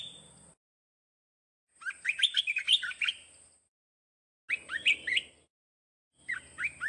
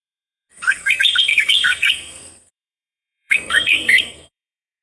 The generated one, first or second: second